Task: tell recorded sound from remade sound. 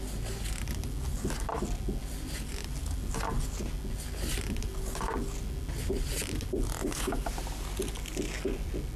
recorded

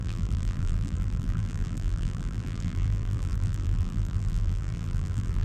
remade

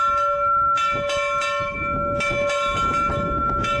recorded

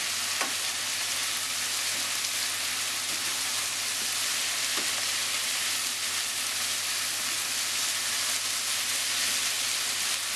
recorded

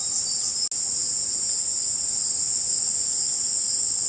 recorded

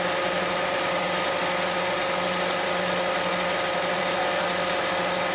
recorded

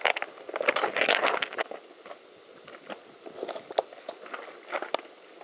recorded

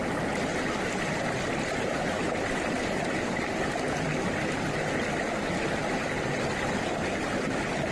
recorded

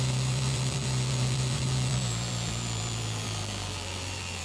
remade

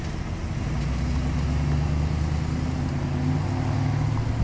recorded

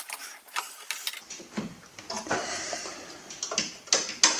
recorded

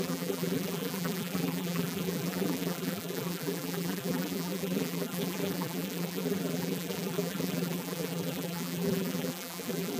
remade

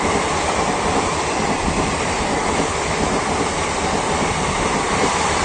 remade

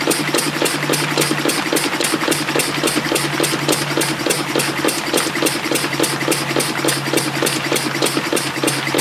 remade